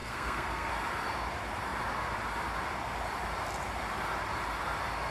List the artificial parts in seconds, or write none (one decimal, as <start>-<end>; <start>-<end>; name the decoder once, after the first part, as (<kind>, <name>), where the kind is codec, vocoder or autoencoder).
0.0-0.7 (codec, SNAC)